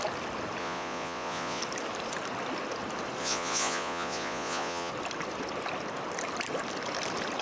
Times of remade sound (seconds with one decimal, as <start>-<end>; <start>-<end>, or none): 0.6-1.6; 3.2-4.9